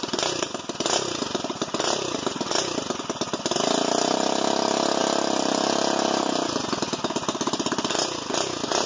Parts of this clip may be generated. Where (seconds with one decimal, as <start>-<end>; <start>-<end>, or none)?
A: none